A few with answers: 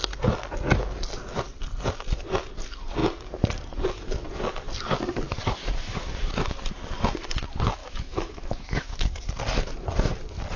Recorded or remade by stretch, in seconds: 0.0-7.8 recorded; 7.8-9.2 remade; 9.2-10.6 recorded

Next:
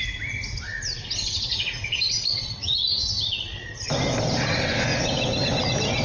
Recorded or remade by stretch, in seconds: 0.0-6.0 recorded

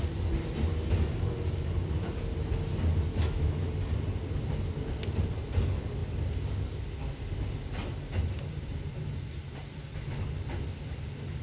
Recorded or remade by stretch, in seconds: 0.0-3.1 recorded; 3.1-3.7 remade; 3.7-11.4 recorded

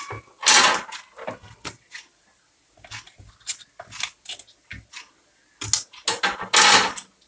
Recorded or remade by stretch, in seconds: 0.0-7.3 recorded

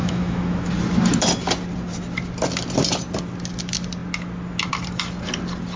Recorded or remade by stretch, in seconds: 0.0-0.7 remade; 0.7-5.8 recorded